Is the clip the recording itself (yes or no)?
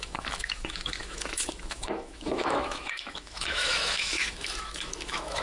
no